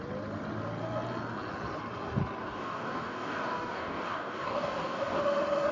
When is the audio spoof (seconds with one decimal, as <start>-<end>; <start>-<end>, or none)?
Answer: 2.4-5.2